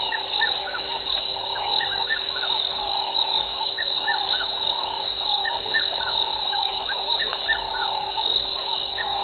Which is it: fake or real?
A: fake